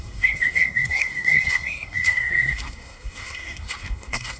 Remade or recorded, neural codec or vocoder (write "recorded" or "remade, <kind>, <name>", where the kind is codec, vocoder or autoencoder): remade, codec, SNAC